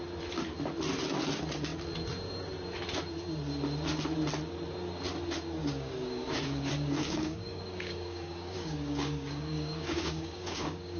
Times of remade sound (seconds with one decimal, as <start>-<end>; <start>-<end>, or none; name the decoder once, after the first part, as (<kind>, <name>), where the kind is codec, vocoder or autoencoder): 5.6-11.0 (codec, DAC)

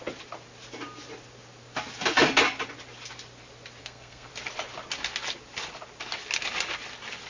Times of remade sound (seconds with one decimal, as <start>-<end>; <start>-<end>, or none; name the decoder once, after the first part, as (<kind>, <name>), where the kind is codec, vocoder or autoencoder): 3.8-4.3 (codec, SNAC)

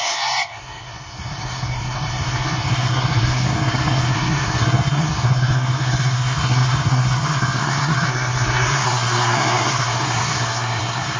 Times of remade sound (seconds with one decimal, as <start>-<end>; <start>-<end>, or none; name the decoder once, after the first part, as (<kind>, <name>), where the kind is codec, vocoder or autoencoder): 0.0-11.2 (codec, SNAC)